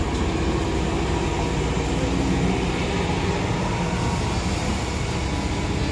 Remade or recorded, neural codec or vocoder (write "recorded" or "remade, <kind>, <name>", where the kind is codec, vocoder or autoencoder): recorded